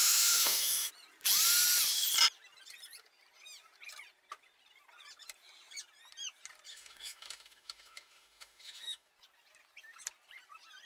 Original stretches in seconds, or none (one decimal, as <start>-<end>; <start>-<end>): 0.9-6.7; 9.1-10.9